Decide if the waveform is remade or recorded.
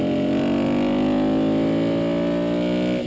recorded